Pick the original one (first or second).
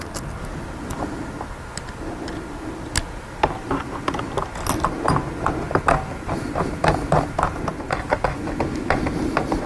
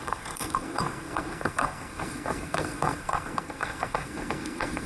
first